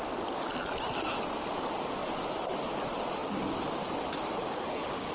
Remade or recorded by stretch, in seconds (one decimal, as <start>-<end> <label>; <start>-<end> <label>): 0.0-4.4 recorded; 4.4-5.1 remade

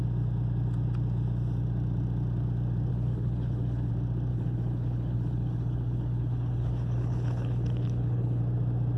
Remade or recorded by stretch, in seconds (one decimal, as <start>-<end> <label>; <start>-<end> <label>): 0.0-2.9 recorded; 2.9-3.9 remade; 3.9-4.3 recorded; 4.3-8.4 remade; 8.4-9.0 recorded